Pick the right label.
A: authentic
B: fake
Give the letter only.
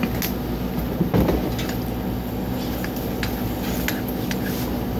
A